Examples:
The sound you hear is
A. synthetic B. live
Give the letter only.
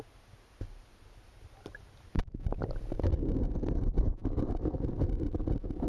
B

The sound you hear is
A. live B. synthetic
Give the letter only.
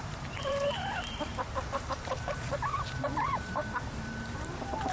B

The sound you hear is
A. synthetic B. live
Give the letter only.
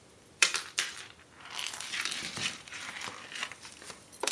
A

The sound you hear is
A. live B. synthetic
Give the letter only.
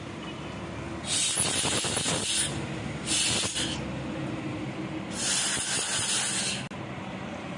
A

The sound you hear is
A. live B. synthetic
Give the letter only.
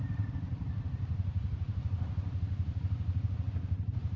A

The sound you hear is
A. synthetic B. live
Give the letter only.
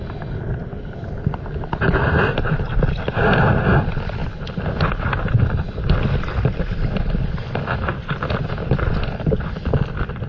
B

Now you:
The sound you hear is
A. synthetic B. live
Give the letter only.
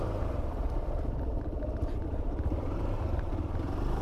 A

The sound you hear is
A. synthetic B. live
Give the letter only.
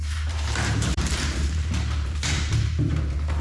A